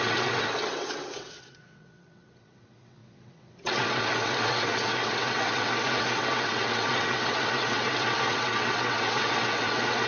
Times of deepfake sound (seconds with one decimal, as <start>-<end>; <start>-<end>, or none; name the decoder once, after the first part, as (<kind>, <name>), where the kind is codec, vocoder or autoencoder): 0.0-10.1 (vocoder, WaveNeXt)